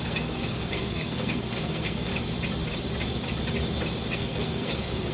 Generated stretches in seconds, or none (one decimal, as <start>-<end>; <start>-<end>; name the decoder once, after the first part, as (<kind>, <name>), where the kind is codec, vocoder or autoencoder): 0.0-2.1 (codec, SNAC); 4.1-5.1